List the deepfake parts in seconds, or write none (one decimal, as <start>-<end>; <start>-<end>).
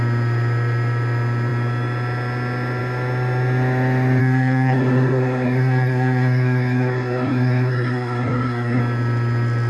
4.2-8.8